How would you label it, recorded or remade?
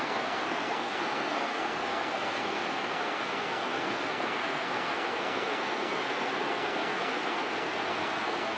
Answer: remade